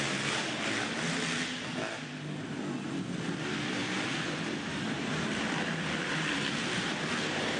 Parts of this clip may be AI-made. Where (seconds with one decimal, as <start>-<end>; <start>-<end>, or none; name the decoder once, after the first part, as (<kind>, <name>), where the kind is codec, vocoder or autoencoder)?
none